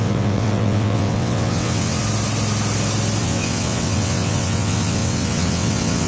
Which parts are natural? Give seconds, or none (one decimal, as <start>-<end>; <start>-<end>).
2.0-3.2